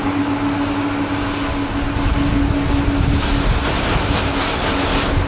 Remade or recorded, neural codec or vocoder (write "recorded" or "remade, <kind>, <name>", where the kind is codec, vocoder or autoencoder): recorded